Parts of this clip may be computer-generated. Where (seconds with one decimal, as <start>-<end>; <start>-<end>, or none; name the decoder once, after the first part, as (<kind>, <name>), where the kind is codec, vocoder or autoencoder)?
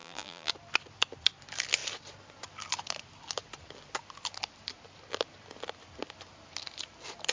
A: 0.0-0.5 (vocoder, BigVGAN v2)